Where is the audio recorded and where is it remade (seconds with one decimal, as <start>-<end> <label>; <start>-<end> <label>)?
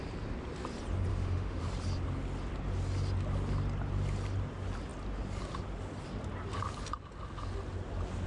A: 0.0-1.1 recorded; 1.1-1.6 remade; 1.6-8.3 recorded